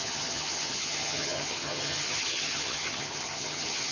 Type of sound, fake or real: fake